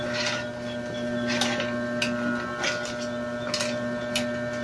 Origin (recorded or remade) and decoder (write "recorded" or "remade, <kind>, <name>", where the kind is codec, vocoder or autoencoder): recorded